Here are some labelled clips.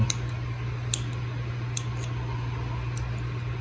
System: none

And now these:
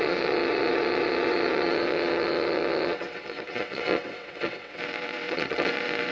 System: vocoder, WaveNeXt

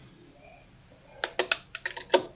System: none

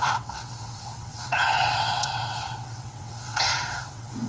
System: vocoder, WaveNeXt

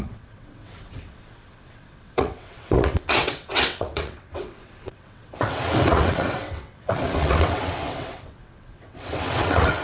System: vocoder, WaveNeXt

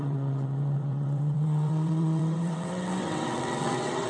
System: vocoder, WaveNeXt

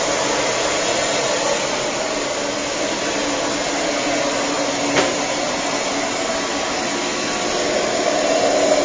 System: none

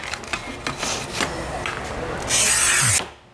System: none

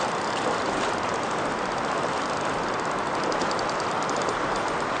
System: none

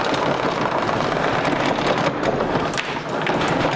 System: none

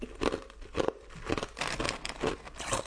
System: none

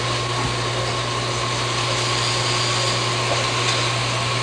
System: none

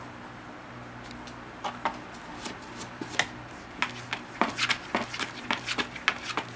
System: none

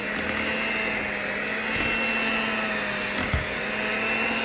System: none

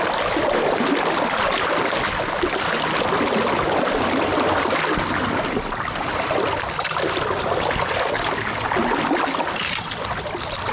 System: none